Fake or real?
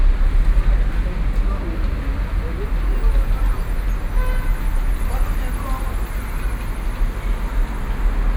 real